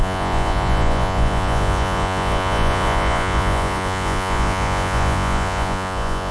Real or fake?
fake